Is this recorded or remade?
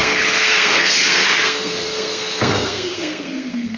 remade